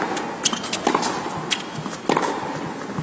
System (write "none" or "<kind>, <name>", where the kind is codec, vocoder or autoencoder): none